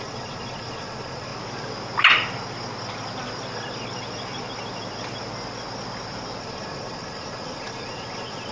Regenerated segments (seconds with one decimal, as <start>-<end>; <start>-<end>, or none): 0.0-1.3; 6.4-8.5